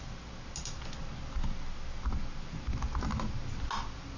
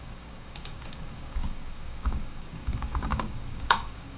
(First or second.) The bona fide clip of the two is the first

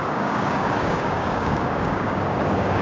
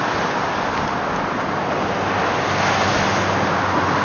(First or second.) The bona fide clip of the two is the second